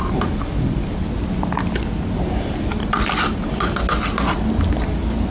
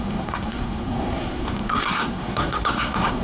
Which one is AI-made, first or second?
second